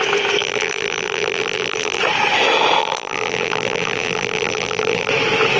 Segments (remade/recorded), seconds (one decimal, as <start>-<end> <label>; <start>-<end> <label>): 0.0-0.4 recorded; 0.4-2.0 remade; 2.0-2.8 recorded; 2.8-5.1 remade; 5.1-5.6 recorded